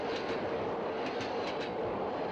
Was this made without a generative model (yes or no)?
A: no